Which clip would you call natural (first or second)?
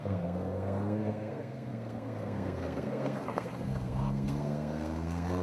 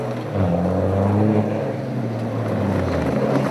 second